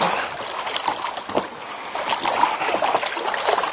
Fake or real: real